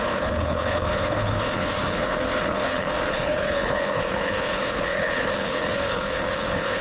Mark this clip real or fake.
fake